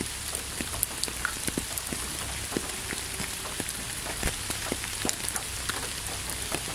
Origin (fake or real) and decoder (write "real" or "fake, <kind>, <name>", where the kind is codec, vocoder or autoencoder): real